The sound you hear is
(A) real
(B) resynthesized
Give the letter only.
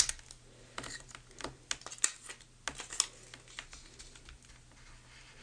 A